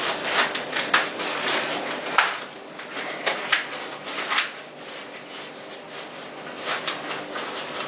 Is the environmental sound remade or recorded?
recorded